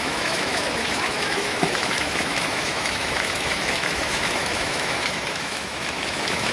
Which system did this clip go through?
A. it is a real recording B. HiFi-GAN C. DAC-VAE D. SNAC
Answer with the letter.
C